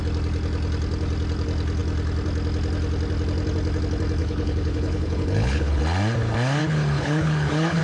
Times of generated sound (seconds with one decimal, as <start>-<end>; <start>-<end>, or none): 4.2-5.8; 6.6-7.8